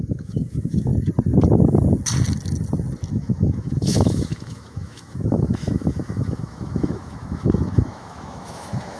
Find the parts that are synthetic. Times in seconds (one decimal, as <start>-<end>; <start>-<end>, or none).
0.0-0.9; 3.1-9.0